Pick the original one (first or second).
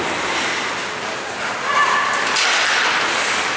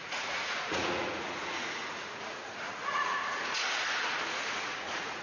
first